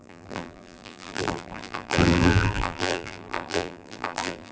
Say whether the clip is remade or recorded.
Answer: remade